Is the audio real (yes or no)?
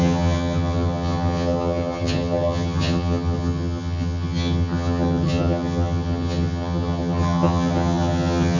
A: no